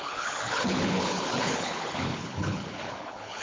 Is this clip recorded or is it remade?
remade